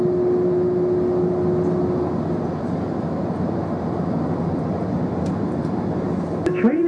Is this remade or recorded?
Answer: recorded